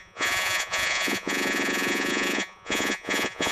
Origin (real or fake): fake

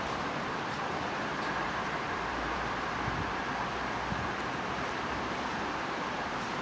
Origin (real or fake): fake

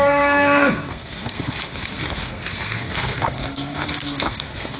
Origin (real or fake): fake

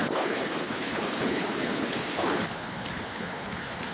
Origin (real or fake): fake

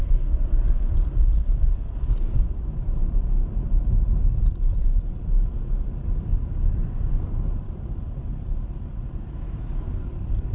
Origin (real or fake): real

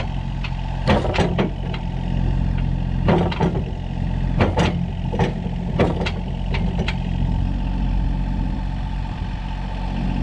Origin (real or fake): real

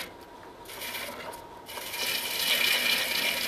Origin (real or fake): real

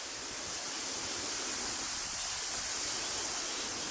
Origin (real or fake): real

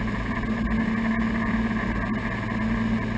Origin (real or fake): real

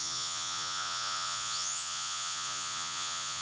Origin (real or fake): fake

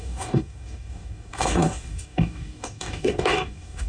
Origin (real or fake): fake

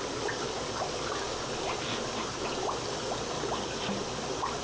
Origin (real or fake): real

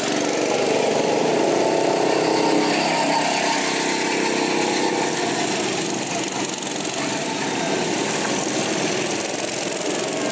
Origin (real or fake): real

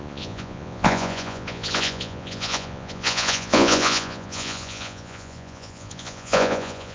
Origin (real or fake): fake